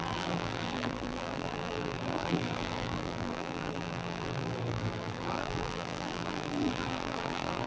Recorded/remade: remade